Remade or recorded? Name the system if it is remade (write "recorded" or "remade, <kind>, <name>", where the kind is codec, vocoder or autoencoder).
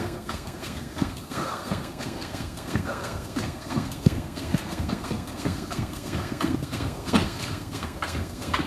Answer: remade, codec, SNAC